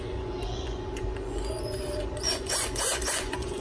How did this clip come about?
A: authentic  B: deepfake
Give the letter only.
B